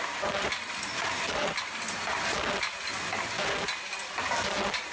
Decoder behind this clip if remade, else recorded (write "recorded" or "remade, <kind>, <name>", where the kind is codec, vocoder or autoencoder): recorded